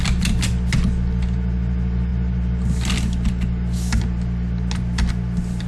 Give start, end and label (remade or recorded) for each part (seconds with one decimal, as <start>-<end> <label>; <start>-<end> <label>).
0.0-5.7 recorded